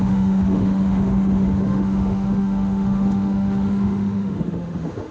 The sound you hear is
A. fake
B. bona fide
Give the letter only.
A